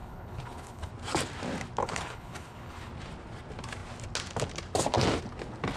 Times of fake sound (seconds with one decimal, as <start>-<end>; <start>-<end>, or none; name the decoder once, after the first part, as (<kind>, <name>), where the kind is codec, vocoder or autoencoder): 0.0-0.9 (codec, HILCodec); 1.8-2.9